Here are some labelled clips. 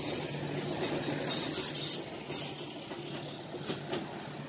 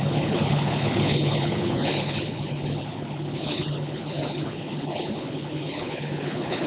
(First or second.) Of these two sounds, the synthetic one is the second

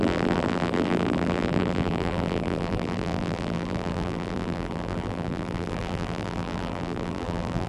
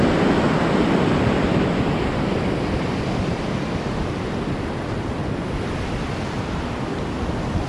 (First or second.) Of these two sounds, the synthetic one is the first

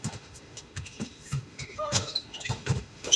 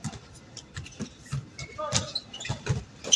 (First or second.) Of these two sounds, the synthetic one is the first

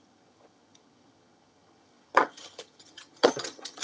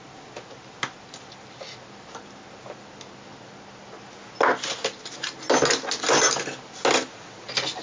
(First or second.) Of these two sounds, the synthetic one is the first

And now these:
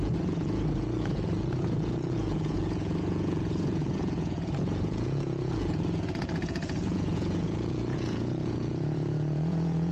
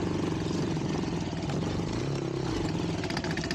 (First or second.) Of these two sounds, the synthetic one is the first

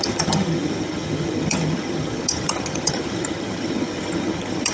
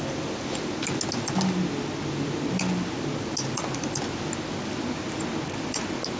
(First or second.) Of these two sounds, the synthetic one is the first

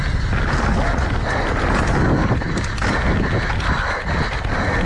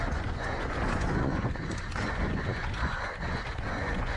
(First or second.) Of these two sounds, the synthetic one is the second